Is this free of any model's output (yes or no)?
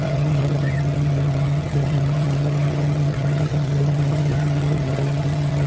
no